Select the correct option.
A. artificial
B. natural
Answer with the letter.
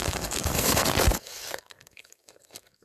A